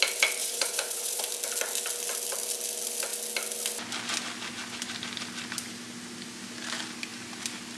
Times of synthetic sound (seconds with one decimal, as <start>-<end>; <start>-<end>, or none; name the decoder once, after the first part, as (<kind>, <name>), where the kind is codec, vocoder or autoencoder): 0.4-1.2 (vocoder, Vocos)